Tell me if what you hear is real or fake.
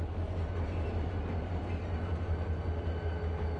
real